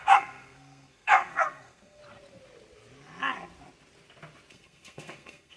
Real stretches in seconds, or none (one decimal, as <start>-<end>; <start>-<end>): 2.0-4.5